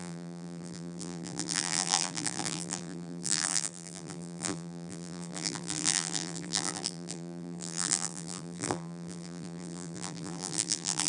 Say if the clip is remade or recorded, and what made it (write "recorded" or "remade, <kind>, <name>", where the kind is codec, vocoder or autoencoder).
remade, vocoder, BigVGAN v2